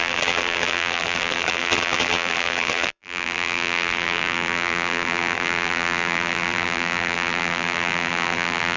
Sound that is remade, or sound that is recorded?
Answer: remade